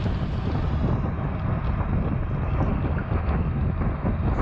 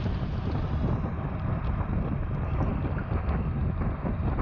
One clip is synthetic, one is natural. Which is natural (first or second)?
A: first